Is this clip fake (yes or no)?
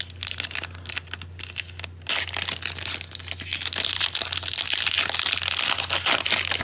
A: no